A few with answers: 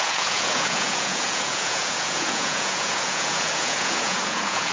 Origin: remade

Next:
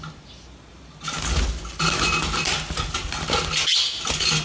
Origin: recorded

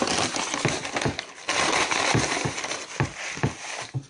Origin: recorded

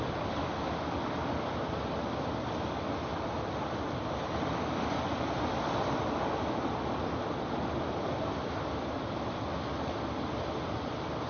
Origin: recorded